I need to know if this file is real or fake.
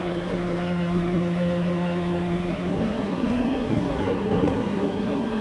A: fake